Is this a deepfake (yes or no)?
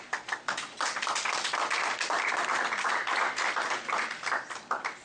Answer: no